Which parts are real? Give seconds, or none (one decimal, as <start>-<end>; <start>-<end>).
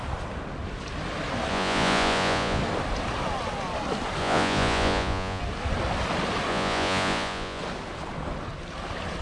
0.0-1.5; 2.6-4.2; 5.4-6.5; 7.6-9.2